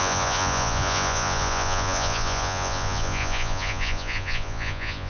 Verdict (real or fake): fake